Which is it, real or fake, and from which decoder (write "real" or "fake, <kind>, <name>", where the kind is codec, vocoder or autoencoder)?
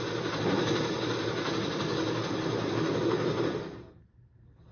real